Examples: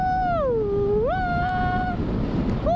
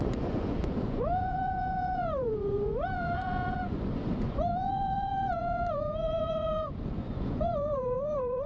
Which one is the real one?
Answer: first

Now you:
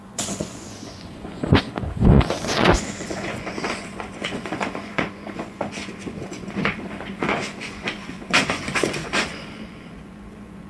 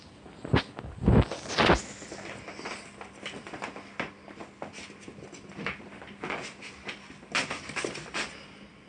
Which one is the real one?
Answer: second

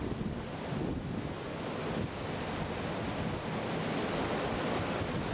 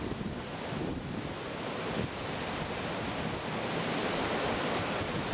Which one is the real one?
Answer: first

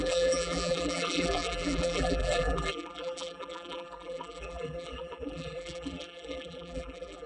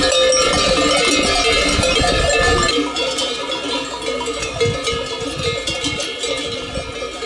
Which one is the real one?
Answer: second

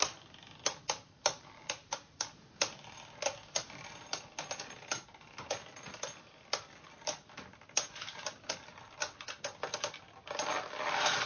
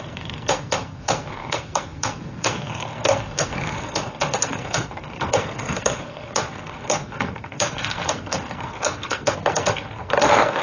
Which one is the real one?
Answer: first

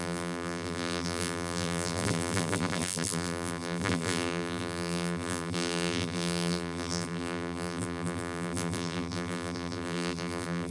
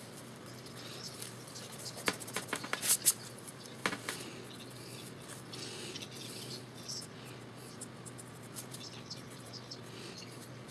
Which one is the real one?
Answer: second